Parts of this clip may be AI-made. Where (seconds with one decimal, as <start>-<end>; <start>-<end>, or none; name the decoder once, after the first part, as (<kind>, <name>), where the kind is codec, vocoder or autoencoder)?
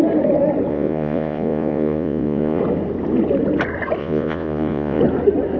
0.7-2.6 (vocoder, Vocos); 4.0-5.0